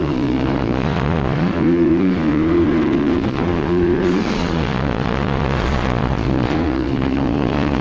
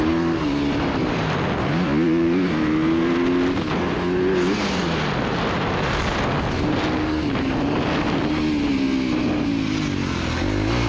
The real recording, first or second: second